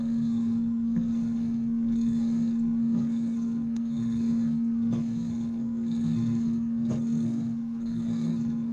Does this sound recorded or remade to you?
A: remade